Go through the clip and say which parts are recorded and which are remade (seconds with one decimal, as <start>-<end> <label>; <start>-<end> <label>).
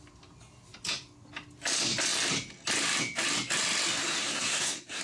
0.0-4.2 recorded; 4.2-5.0 remade